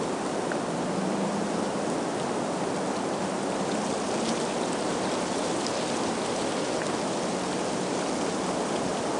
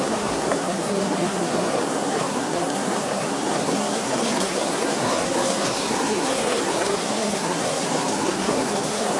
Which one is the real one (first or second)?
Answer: first